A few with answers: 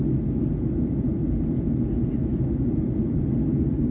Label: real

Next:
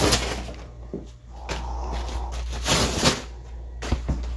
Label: real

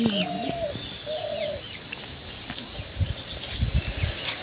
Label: real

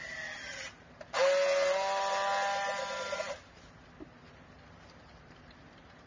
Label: real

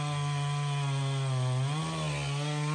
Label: real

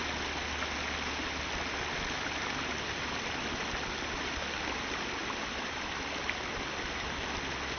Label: real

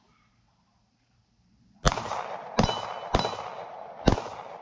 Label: real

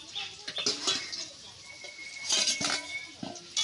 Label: real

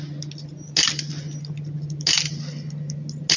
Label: real